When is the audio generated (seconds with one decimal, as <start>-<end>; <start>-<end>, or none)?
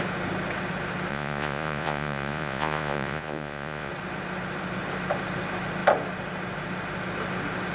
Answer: 1.1-3.9